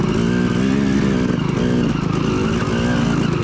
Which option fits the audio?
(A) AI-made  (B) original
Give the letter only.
B